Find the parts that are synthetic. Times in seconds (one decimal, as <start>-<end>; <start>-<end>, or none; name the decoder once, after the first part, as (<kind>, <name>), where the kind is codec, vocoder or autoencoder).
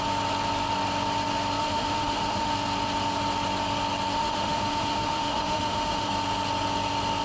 1.6-2.5 (autoencoder, DAC-VAE); 4.2-6.1